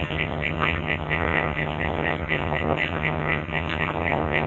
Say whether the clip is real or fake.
fake